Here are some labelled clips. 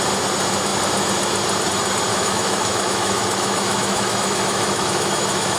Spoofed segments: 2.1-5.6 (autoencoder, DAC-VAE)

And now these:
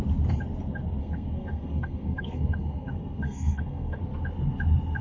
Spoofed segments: 1.0-4.0 (codec, SNAC)

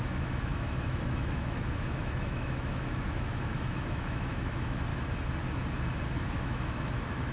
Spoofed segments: 0.0-4.9 (autoencoder, DAC-VAE); 6.1-7.3

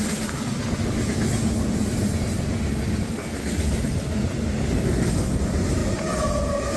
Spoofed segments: none

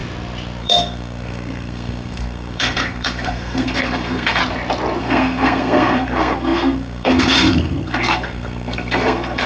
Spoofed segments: 0.6-4.4 (codec, SNAC); 5.0-9.5